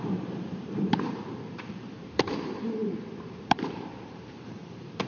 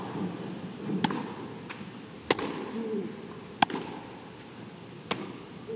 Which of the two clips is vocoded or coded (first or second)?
first